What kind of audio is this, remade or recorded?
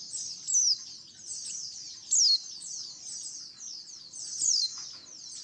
recorded